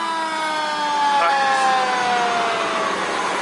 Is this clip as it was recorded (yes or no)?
yes